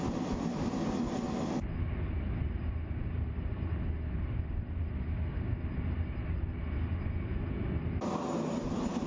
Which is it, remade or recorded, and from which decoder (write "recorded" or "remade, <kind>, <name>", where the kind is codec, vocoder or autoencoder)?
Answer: recorded